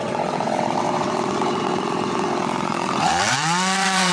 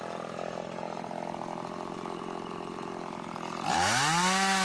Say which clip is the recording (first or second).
second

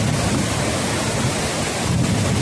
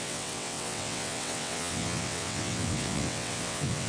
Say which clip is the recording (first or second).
first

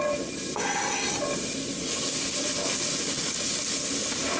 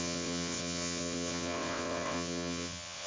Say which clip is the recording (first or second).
first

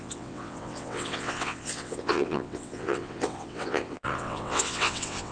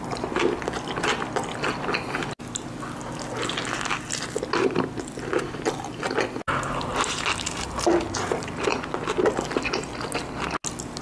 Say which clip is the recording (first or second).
second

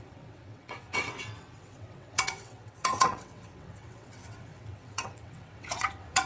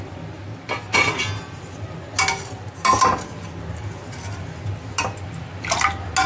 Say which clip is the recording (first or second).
second